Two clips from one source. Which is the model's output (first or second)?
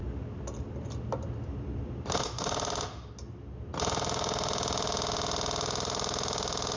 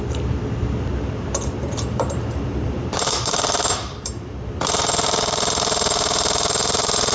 second